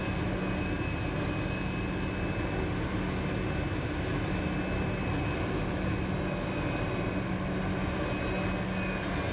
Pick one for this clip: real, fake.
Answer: real